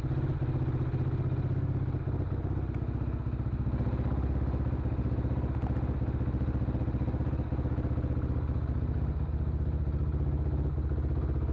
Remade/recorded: recorded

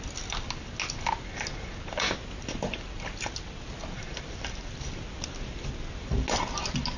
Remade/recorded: recorded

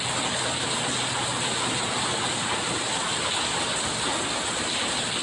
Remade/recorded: recorded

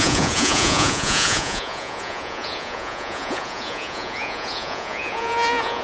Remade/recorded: remade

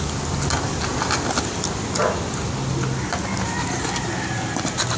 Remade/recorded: recorded